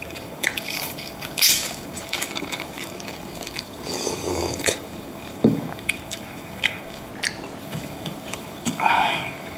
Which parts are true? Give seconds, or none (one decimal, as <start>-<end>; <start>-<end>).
7.1-7.6